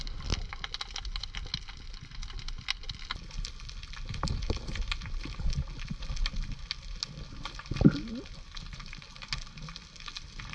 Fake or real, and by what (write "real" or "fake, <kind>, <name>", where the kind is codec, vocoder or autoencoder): real